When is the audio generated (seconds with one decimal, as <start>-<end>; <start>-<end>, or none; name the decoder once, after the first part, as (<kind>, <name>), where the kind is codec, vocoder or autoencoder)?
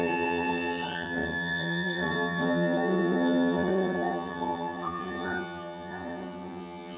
0.0-7.0 (vocoder, HiFi-GAN)